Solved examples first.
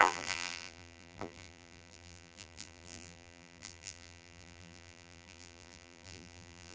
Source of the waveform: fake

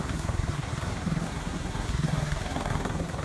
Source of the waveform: fake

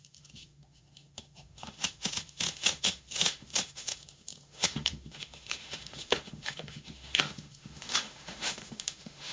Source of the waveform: fake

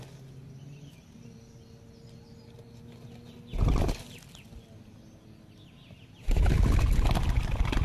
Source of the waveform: real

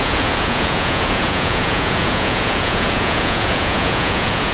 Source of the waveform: fake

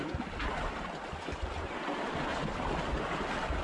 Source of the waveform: real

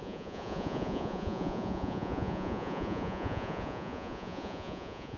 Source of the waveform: fake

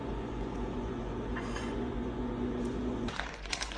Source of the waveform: fake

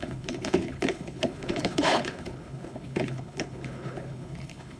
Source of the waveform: fake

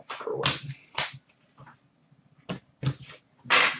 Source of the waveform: real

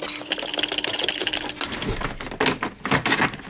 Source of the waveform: real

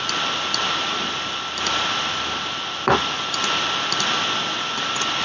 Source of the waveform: real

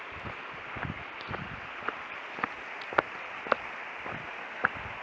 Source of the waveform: real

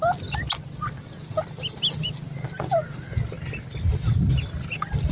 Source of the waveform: real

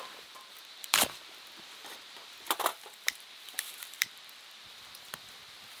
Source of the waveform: fake